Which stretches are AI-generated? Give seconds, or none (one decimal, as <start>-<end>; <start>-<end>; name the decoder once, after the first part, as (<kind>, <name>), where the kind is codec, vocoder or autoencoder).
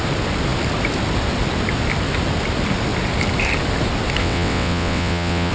4.2-5.5 (vocoder, WaveNeXt)